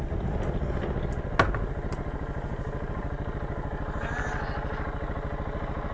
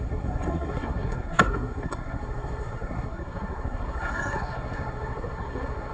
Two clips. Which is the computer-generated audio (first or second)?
second